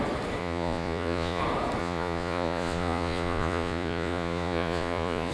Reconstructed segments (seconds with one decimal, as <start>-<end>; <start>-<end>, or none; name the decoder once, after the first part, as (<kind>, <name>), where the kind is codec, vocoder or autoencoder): 0.4-1.4 (vocoder, Vocos); 1.8-5.3